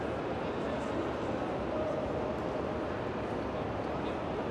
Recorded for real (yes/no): yes